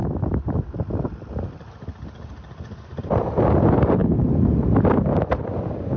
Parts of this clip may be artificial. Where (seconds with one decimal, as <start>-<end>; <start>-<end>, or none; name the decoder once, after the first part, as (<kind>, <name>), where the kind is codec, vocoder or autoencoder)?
none